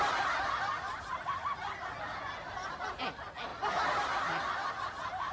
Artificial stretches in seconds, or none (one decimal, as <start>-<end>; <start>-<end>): none

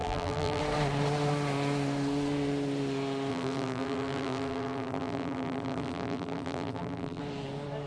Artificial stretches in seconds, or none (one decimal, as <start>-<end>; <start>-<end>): 0.0-0.6; 3.3-7.2

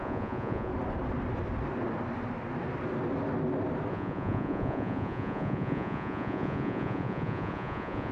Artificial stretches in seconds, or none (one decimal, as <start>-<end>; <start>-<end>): 0.0-0.7; 3.9-8.1

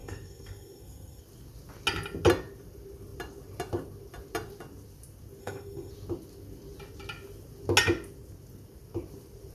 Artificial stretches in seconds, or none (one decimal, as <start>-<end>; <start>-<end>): 0.0-1.2; 5.4-5.9